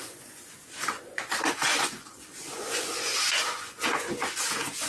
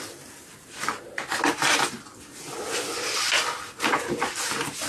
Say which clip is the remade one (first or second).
first